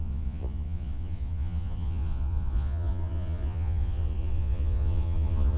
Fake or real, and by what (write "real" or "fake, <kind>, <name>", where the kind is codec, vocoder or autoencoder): fake, vocoder, Vocos